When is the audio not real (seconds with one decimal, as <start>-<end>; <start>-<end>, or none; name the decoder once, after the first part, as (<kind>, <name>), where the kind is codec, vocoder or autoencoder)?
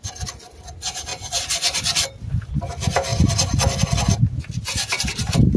none